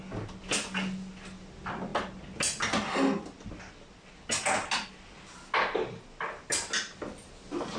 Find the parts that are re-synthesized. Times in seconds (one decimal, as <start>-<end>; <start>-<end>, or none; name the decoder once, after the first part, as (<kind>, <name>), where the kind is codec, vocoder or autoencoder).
none